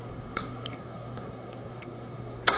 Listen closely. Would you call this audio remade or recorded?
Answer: remade